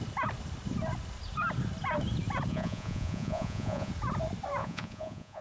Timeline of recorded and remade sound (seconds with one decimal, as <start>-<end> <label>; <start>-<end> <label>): 0.0-2.5 recorded; 2.5-3.9 remade; 3.9-4.6 recorded; 4.6-5.4 remade